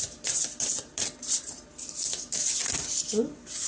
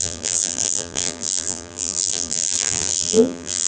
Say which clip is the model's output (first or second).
second